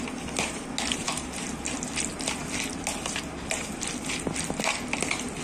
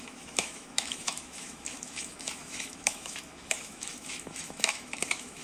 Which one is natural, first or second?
first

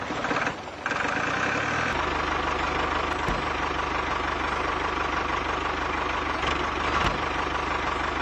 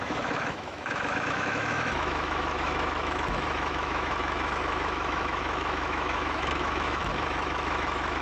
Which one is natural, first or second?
first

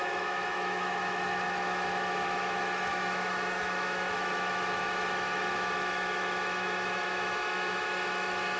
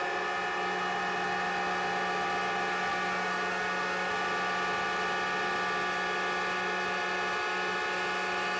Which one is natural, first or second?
second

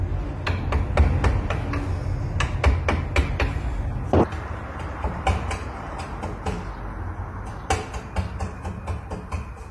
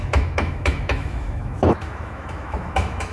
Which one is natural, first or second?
first